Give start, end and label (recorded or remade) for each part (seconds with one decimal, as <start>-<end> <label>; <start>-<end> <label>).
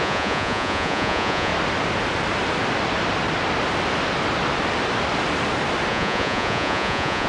0.0-1.5 remade; 1.5-5.9 recorded; 5.9-7.3 remade